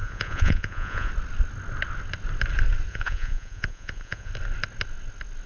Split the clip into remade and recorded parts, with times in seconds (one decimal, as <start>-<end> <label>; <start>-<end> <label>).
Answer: 0.0-1.1 remade; 1.1-2.9 recorded; 2.9-4.3 remade; 4.3-5.5 recorded